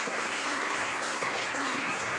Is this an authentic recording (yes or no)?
no